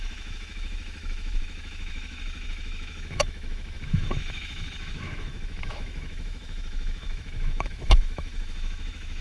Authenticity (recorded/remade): remade